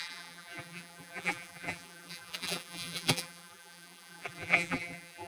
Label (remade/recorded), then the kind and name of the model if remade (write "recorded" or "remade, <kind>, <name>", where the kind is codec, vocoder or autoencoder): remade, vocoder, BigVGAN v2